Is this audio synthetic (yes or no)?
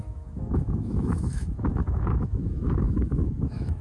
yes